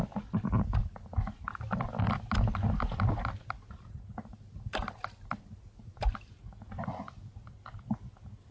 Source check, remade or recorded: recorded